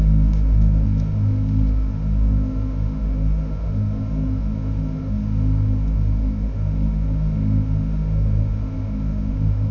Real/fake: fake